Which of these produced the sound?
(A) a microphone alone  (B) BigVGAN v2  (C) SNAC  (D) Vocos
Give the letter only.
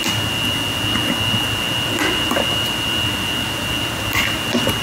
A